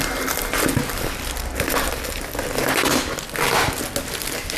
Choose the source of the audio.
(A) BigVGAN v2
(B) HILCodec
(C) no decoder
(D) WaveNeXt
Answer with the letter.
C